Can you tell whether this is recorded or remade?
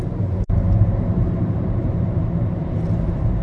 remade